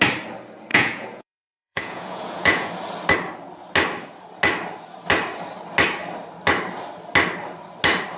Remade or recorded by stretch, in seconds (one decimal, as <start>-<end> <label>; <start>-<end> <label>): 0.0-0.7 recorded; 0.7-2.7 remade; 2.7-8.2 recorded